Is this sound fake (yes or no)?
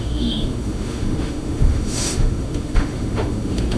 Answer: yes